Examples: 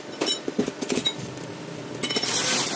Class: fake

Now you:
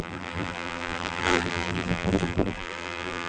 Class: fake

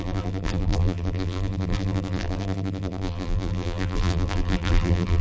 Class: fake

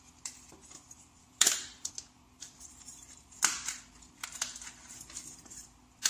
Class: fake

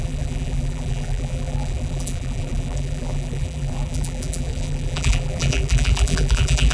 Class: fake